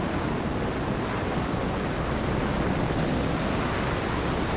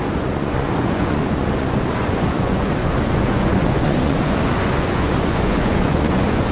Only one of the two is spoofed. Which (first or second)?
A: second